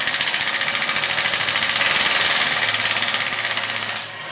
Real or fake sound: real